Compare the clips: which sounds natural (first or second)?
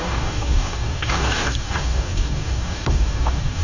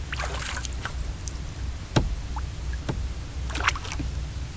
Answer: second